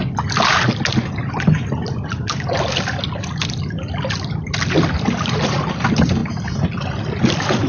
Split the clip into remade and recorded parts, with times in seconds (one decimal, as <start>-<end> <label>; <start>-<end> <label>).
0.0-7.7 recorded